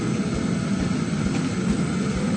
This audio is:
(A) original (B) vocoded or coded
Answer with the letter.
A